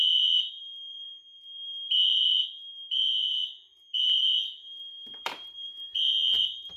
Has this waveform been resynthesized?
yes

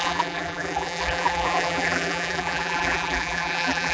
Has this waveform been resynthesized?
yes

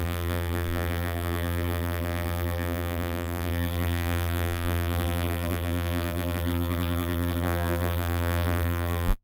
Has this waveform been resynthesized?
yes